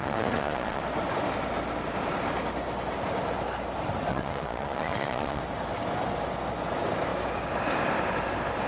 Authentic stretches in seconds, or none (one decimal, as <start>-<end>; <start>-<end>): 0.8-4.1; 5.4-8.7